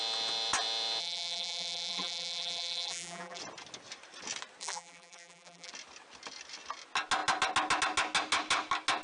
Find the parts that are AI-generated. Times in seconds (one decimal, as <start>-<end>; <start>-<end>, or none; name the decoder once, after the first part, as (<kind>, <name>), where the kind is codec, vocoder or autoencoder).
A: 1.0-3.4 (vocoder, BigVGAN v2); 4.6-5.7